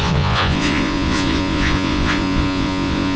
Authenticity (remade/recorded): remade